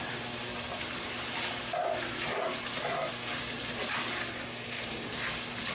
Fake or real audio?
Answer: real